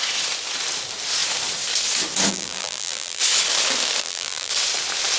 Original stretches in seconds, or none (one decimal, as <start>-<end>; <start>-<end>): 0.0-2.3; 3.2-4.0; 4.5-5.2